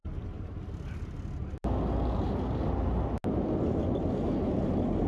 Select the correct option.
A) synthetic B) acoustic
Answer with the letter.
B